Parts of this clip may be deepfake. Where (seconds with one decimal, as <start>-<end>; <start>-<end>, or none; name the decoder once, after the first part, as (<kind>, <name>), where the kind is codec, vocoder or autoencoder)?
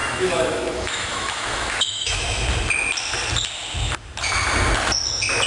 0.0-2.4 (autoencoder, DAC-VAE)